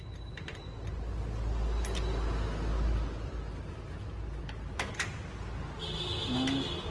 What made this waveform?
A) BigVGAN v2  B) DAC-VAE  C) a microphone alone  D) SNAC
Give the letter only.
C